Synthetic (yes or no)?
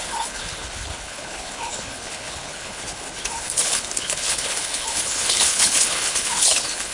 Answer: yes